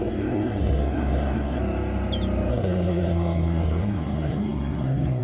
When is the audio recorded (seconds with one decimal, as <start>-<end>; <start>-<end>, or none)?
1.6-2.5